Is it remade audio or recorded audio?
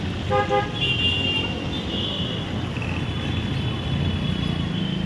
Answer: recorded